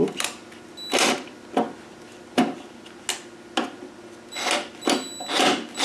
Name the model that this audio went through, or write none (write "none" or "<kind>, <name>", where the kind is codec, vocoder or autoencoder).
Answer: none